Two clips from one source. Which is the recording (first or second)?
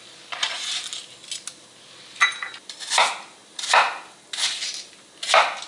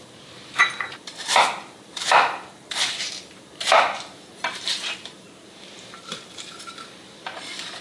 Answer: first